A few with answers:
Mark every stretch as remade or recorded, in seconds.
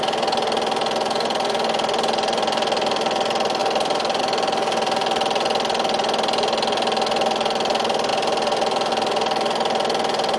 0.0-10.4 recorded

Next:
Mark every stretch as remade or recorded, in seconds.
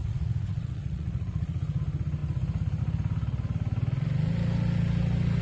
0.0-1.8 remade; 1.8-5.4 recorded